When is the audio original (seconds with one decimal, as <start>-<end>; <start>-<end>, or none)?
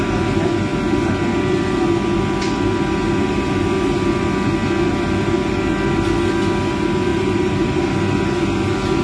0.0-7.1; 7.8-9.0